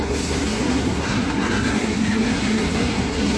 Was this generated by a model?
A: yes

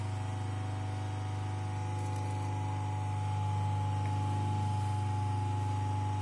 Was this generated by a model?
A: no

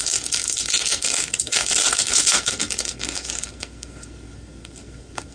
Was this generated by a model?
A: yes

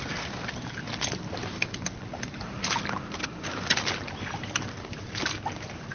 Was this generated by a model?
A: no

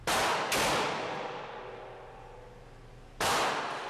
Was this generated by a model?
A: no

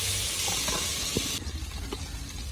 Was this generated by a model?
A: no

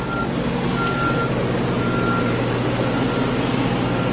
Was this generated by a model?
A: no